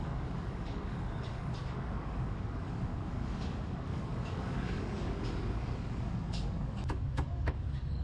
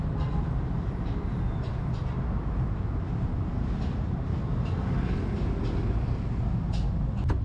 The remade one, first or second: first